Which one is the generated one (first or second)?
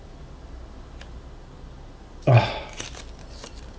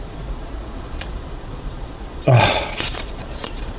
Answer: second